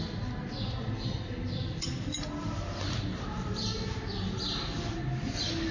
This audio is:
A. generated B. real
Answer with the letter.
B